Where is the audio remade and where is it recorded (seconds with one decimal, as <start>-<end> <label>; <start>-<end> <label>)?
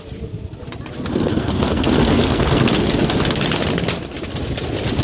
0.0-1.1 recorded; 1.1-2.9 remade; 2.9-5.0 recorded